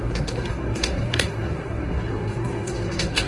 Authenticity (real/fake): fake